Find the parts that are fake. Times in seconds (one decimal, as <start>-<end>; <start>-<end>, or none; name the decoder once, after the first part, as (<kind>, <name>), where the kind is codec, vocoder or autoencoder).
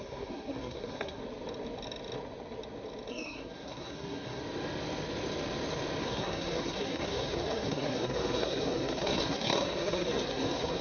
0.0-1.2 (codec, SNAC); 3.1-4.4; 6.0-10.8